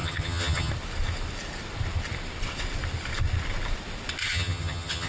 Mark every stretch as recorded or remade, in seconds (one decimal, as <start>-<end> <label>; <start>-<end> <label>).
0.0-0.7 remade; 0.7-4.2 recorded; 4.2-5.1 remade